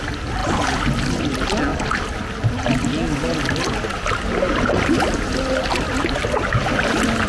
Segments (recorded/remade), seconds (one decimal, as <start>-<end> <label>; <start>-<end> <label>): 0.0-7.3 recorded